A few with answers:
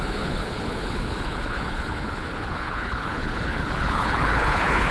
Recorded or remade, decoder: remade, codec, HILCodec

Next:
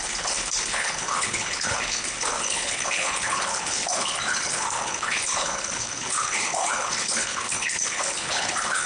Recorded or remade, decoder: remade, codec, HILCodec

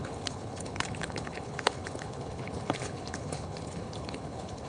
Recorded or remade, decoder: remade, codec, HILCodec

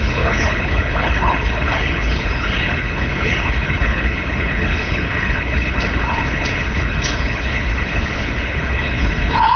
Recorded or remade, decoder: remade, codec, HILCodec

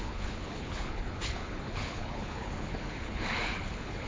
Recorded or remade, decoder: remade, codec, HILCodec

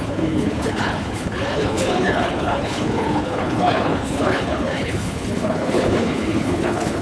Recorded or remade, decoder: remade, codec, HILCodec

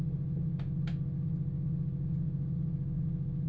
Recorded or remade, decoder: recorded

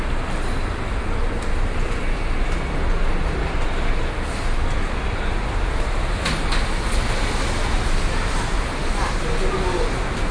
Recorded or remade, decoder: recorded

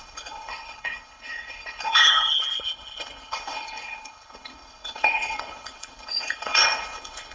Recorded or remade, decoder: remade, codec, HILCodec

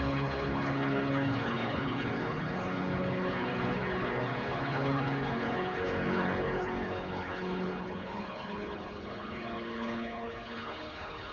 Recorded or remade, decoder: remade, codec, HILCodec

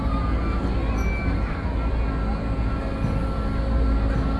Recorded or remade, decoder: recorded